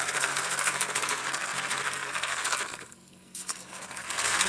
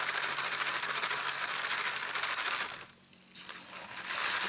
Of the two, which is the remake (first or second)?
first